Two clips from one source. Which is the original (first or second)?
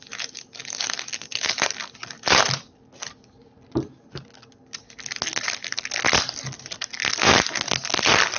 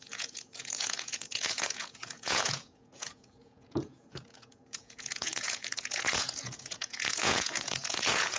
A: first